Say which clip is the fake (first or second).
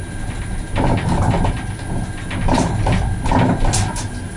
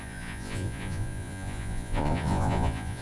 second